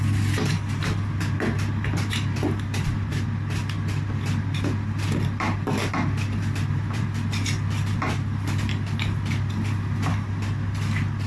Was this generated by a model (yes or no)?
yes